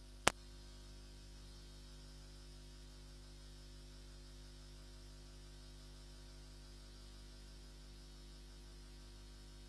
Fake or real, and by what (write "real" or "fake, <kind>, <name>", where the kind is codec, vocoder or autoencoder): real